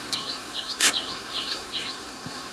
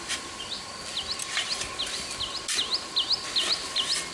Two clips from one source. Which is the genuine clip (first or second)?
second